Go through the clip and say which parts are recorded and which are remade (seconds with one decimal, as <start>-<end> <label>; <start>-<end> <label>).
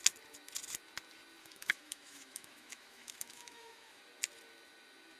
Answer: 0.0-1.4 recorded; 1.4-4.0 remade; 4.0-5.2 recorded